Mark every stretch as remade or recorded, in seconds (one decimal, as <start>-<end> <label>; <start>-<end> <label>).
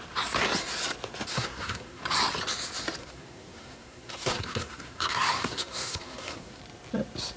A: 0.0-1.3 recorded; 1.3-2.0 remade; 2.0-3.0 recorded; 3.0-6.6 remade; 6.6-7.4 recorded